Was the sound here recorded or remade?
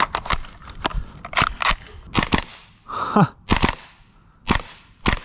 recorded